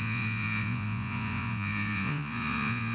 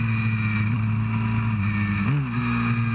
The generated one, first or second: first